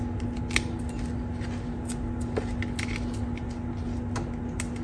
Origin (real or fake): real